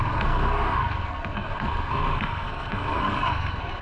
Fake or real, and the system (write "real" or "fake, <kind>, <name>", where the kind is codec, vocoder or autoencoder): fake, codec, SNAC